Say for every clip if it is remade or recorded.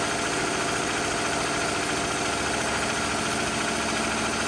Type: recorded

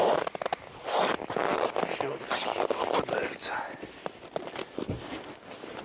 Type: recorded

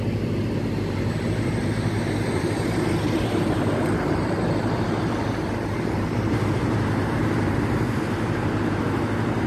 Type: remade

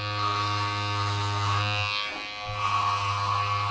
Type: recorded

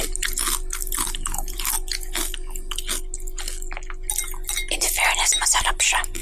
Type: recorded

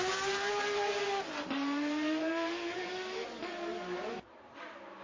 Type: remade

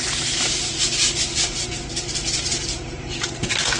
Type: remade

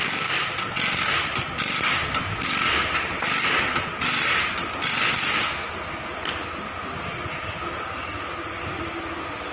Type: recorded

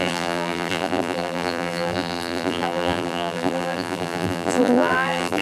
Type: remade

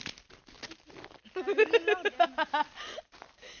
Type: recorded